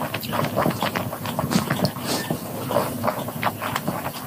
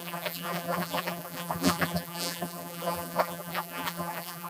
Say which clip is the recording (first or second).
first